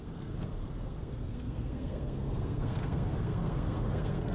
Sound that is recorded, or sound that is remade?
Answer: remade